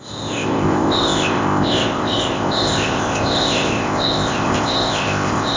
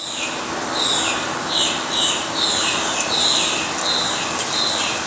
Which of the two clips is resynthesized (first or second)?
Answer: first